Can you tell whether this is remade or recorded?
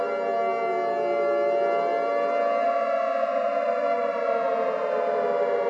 recorded